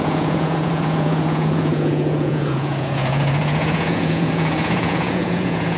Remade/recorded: remade